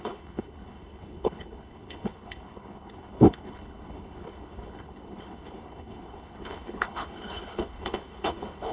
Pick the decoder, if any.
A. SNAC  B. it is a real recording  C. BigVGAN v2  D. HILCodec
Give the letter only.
D